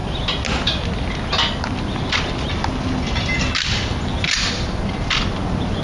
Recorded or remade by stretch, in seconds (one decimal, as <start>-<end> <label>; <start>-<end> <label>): 0.0-5.8 recorded